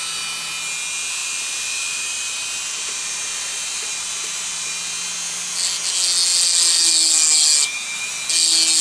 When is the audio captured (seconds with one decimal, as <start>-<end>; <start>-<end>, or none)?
0.0-1.2; 4.7-8.8